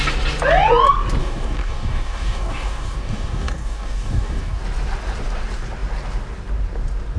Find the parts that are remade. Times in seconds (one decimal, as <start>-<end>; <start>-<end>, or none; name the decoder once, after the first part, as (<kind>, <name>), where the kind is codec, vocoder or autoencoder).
1.2-4.6 (codec, DAC)